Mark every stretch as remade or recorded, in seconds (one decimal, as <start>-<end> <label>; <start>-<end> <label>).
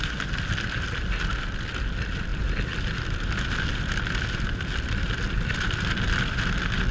0.0-6.9 recorded